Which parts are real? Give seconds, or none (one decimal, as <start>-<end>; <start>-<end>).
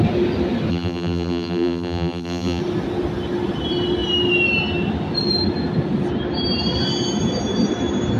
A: 0.0-0.7; 2.6-8.2